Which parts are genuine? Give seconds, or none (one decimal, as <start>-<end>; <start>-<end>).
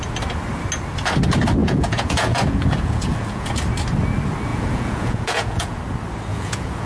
0.0-1.6; 3.5-4.5; 5.8-6.3